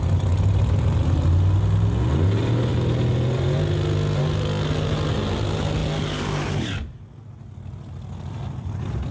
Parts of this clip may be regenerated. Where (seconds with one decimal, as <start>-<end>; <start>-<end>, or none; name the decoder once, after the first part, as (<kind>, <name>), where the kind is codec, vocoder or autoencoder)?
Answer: none